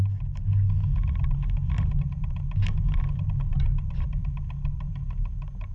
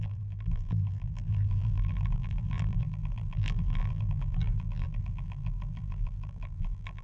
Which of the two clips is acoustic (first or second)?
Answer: first